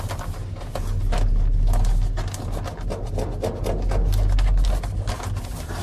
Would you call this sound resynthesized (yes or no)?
no